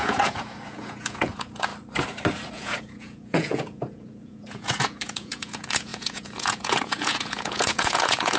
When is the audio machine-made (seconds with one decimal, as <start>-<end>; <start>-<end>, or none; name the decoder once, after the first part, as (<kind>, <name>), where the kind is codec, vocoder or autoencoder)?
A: 0.0-1.7 (vocoder, Vocos); 2.5-8.4